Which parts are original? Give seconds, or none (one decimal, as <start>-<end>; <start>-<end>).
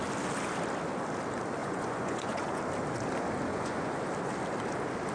0.0-1.6; 2.6-3.5; 4.0-5.1